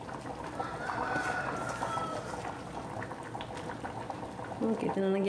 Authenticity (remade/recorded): recorded